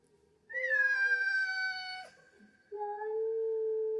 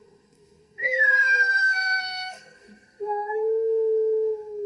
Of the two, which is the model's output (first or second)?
second